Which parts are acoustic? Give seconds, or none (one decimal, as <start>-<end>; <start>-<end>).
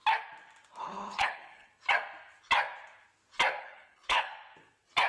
0.0-0.8; 1.7-3.6; 4.3-5.1